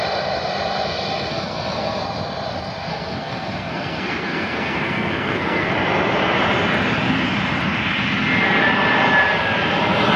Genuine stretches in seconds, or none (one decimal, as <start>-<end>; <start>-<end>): 0.0-1.3; 2.0-2.9; 5.7-10.2